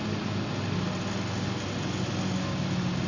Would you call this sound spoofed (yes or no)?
no